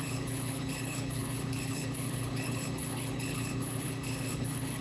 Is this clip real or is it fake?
fake